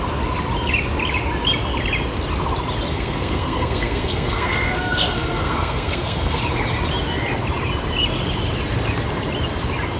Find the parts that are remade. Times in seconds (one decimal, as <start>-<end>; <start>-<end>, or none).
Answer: 2.9-6.4